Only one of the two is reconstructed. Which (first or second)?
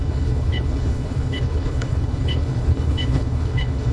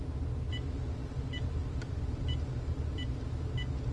first